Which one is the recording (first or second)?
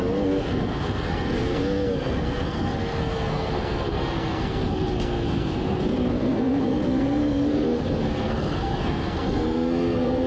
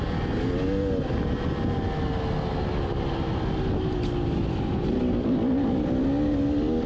second